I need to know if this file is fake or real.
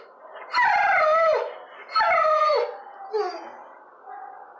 real